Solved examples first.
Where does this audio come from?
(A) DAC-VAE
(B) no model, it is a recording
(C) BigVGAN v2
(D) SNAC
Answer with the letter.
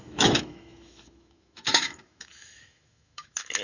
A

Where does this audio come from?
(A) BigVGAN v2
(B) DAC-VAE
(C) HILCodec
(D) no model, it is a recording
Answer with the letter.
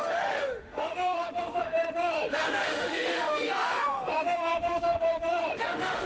B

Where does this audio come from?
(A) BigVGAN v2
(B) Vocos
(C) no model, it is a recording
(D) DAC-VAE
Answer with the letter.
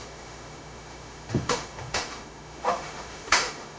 D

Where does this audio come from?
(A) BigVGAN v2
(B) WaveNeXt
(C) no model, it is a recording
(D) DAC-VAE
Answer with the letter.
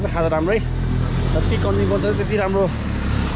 C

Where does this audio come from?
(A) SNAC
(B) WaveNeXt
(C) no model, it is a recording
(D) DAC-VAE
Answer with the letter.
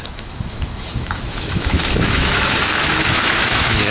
D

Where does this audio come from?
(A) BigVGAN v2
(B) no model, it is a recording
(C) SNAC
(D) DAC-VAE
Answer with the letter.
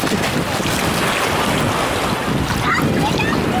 B